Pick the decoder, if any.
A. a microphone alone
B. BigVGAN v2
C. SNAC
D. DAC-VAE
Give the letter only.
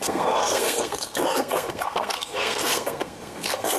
C